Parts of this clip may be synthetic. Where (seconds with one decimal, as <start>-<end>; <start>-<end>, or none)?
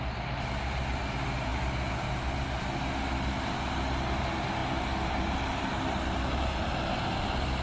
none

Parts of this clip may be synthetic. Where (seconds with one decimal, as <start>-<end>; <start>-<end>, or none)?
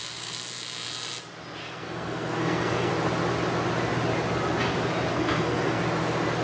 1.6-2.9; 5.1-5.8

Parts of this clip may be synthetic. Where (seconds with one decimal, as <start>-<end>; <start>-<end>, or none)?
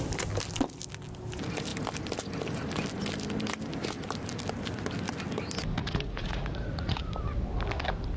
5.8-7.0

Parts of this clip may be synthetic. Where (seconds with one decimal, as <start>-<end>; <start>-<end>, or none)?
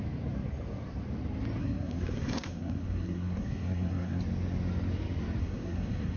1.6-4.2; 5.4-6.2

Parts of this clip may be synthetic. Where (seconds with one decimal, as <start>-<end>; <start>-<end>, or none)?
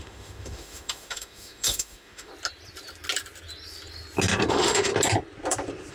0.0-2.3; 4.5-4.9